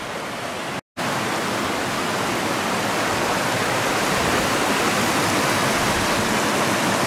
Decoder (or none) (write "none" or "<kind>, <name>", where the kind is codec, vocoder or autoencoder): none